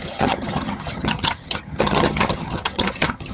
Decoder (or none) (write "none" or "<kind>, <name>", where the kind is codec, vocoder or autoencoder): vocoder, HiFi-GAN